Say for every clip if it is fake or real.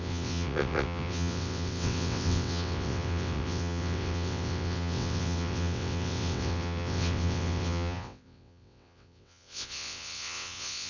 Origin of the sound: fake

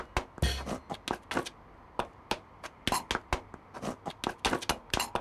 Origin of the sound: real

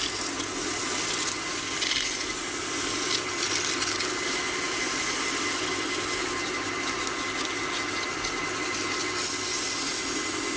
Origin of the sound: real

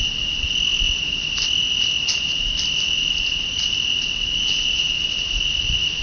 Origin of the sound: real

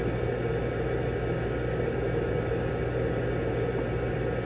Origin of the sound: real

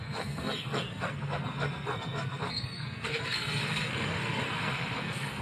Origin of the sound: fake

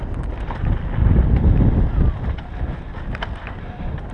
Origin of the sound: real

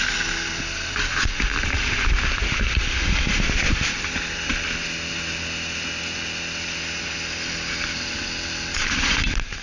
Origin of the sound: real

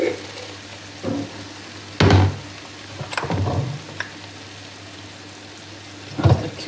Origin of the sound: real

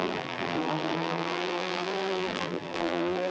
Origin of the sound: fake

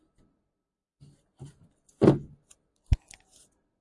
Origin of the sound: real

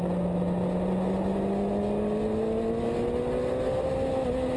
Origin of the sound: real